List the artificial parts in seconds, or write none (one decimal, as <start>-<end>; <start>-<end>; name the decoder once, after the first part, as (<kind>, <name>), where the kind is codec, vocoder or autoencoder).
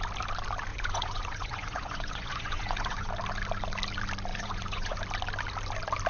0.7-3.1 (vocoder, Vocos); 4.3-5.0